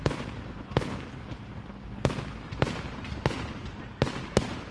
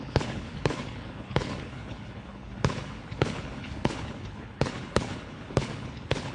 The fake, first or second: second